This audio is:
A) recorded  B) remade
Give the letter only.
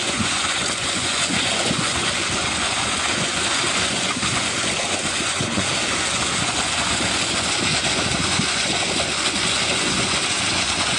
B